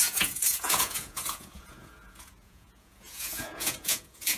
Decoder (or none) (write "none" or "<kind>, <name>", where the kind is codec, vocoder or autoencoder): vocoder, Vocos